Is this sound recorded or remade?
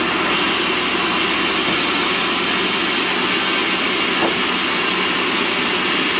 recorded